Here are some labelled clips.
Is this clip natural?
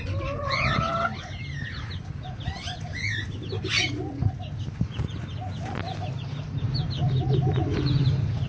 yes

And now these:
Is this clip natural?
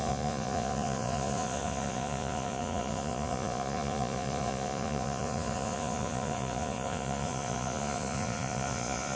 no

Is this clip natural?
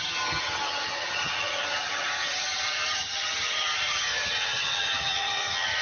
no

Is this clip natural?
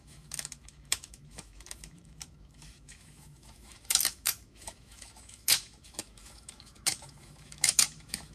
no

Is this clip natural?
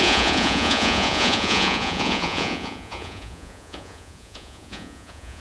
no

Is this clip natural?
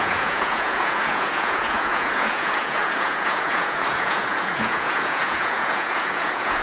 no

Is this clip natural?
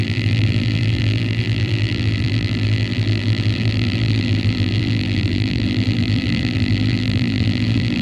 no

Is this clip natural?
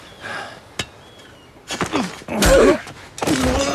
yes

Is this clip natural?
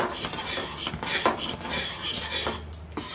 yes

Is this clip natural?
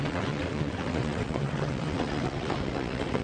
no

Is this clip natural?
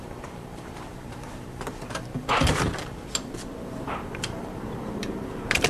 no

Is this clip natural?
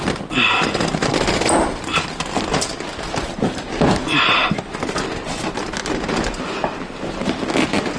yes